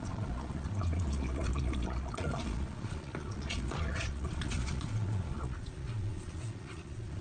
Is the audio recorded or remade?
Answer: remade